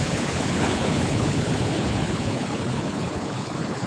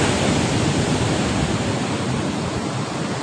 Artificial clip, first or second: first